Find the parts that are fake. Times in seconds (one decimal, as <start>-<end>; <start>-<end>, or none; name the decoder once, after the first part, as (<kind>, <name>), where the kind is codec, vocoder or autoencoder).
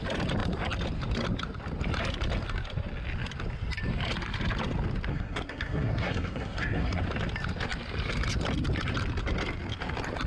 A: 5.1-7.0 (codec, SNAC)